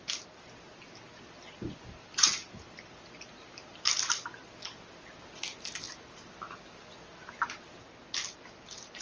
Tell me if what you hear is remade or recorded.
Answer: recorded